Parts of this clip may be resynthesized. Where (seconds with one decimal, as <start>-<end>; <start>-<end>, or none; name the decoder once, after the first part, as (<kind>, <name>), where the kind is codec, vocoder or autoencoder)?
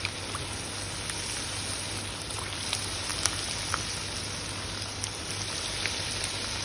none